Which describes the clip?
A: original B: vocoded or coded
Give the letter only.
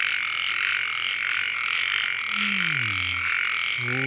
A